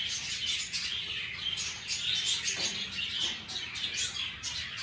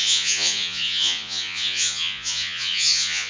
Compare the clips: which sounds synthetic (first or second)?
second